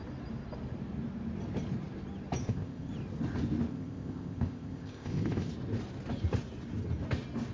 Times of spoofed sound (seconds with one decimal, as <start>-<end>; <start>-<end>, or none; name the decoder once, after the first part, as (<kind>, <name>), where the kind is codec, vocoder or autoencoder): 2.4-2.9 (codec, ZipCodec); 3.7-5.5